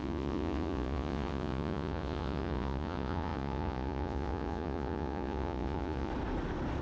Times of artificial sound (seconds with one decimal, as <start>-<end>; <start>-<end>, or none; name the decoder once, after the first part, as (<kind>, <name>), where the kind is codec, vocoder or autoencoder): 0.0-6.1 (vocoder, Vocos)